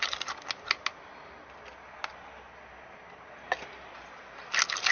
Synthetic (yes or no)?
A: no